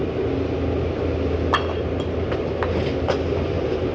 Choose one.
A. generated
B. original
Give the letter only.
B